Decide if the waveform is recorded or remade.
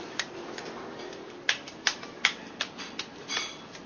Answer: remade